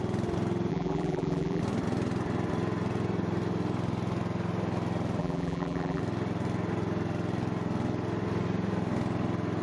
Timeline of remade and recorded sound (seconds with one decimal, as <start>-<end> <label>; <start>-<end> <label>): 0.0-0.7 recorded; 0.7-1.6 remade; 1.6-5.2 recorded; 5.2-6.0 remade; 6.0-9.6 recorded